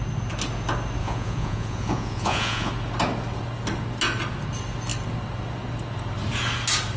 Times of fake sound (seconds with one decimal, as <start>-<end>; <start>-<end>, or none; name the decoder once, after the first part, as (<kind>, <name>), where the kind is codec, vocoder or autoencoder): 1.0-2.7 (vocoder, Vocos)